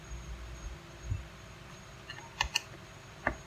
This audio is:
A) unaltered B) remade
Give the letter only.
A